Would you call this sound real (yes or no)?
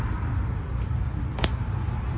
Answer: yes